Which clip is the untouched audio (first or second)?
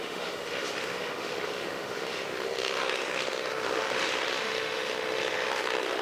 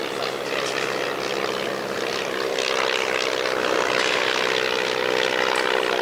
second